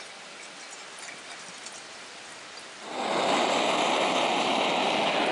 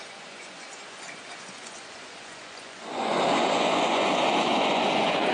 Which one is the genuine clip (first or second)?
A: first